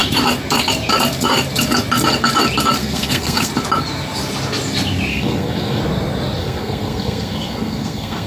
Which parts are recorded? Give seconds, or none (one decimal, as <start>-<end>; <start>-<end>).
0.0-2.8; 3.5-5.1; 5.8-6.4